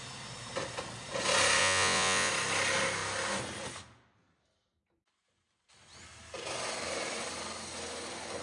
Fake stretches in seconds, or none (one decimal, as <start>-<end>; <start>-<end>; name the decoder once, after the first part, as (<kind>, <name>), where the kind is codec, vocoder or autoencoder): 1.6-2.3 (vocoder, Vocos)